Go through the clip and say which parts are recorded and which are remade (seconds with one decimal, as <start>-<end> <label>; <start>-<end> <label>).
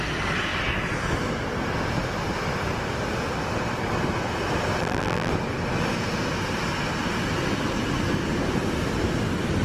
0.0-4.8 recorded; 4.8-5.3 remade; 5.3-9.6 recorded